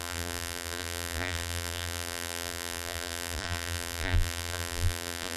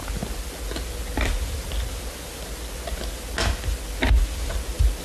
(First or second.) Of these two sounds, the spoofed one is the first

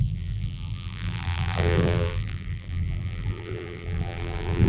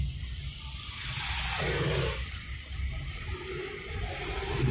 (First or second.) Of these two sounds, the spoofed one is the first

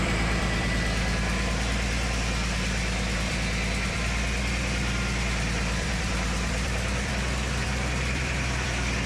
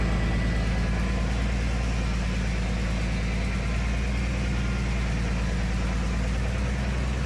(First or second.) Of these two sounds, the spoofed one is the first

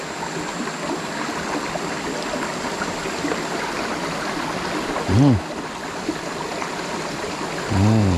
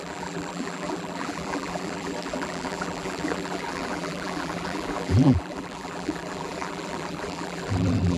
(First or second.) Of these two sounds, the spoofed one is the second